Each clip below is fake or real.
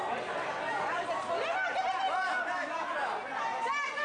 real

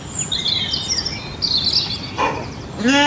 real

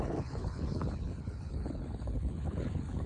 fake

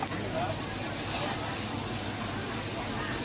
real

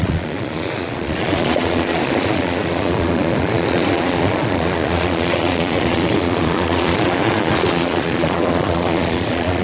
fake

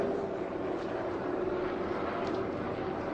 fake